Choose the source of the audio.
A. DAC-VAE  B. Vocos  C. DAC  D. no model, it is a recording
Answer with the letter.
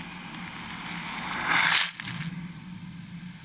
D